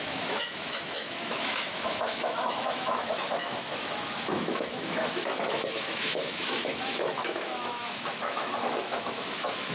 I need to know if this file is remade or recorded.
remade